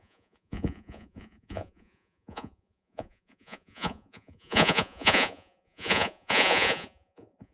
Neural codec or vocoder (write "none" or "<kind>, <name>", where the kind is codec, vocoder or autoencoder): vocoder, Vocos